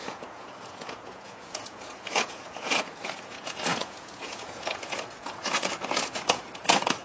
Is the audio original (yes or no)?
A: no